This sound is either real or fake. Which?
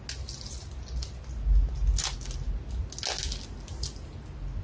real